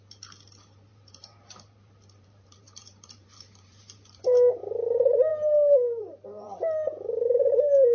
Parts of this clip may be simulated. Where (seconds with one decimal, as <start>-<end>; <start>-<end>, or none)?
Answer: 0.9-4.6; 5.3-6.6